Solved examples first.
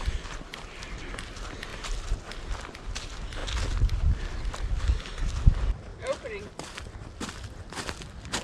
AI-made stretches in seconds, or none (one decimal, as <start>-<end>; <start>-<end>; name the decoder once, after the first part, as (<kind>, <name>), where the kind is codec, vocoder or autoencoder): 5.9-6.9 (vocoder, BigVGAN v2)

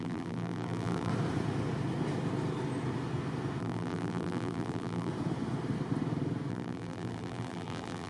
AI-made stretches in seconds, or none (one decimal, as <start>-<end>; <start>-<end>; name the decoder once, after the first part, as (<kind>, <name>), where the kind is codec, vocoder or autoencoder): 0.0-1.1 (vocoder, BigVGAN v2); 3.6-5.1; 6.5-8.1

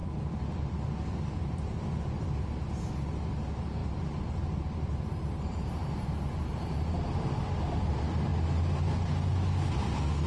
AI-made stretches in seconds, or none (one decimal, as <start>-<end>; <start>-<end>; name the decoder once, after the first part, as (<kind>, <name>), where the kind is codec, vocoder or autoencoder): 3.8-5.7 (vocoder, BigVGAN v2)